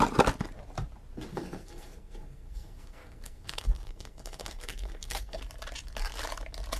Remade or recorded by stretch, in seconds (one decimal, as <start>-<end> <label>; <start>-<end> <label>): 0.0-1.3 recorded; 1.3-5.4 remade; 5.4-6.8 recorded